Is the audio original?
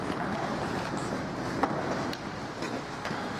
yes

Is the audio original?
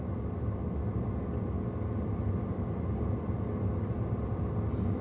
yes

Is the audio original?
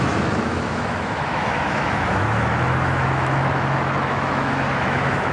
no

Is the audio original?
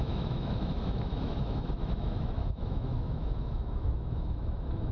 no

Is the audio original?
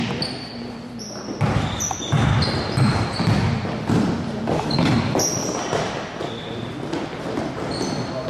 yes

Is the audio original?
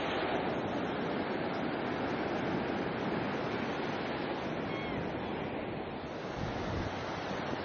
yes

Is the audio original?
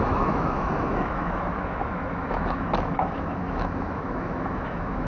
no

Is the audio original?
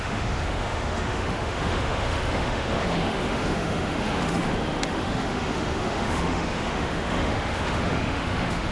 no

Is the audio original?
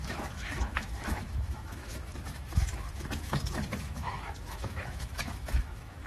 no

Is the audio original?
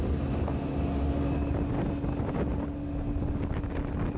yes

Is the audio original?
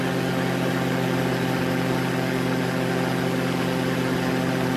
yes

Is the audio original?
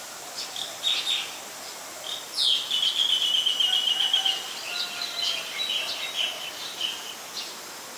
yes